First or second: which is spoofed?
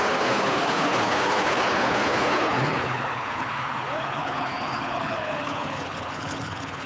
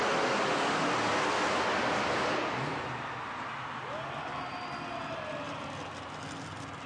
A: first